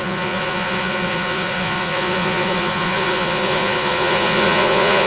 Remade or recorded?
remade